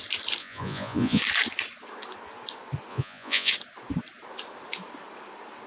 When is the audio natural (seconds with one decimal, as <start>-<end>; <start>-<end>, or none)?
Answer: 0.0-0.4; 1.2-2.9; 3.5-5.7